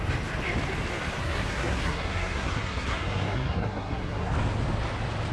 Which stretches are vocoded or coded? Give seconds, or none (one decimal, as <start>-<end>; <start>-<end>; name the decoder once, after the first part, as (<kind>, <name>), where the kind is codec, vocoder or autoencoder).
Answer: 1.2-4.3 (codec, SNAC)